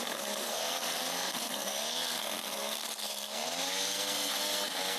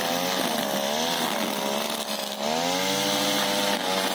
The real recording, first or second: second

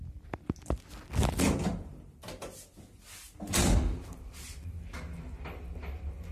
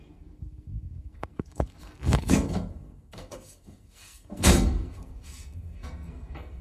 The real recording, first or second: first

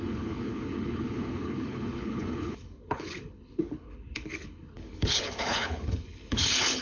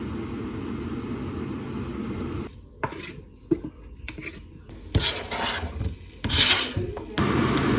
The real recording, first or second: second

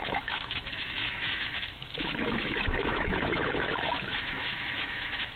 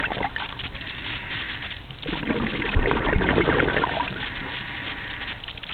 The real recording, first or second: second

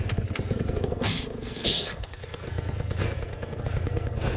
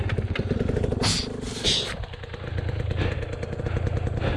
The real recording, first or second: second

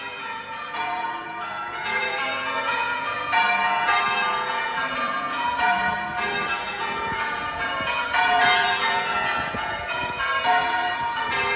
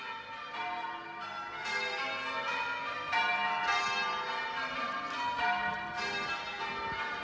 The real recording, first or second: second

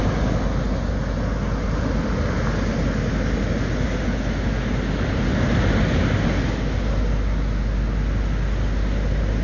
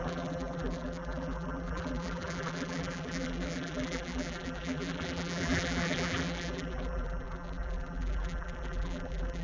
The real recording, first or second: first